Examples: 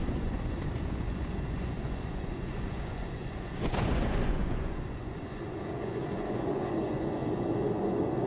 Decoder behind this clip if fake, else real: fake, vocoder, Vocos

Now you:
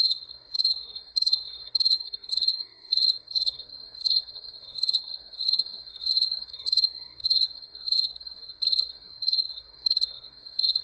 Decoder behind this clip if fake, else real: fake, codec, SNAC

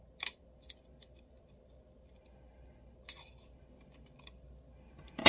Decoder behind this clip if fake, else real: real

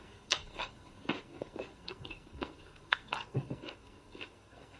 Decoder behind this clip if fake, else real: fake, codec, SNAC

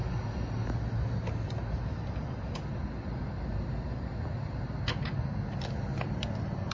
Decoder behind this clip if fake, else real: real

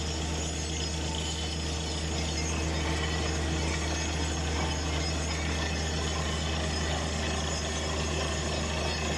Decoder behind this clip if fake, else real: real